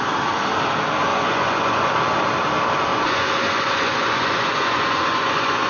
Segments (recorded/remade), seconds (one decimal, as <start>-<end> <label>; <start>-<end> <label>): 0.0-1.1 recorded; 1.1-1.9 remade; 1.9-2.9 recorded; 2.9-5.7 remade